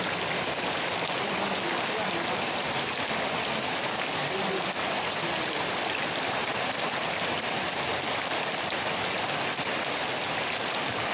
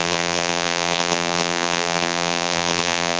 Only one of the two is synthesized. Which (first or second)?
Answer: second